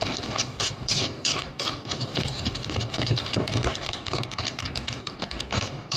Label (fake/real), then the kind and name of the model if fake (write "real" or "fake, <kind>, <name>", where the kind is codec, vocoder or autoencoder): fake, codec, DAC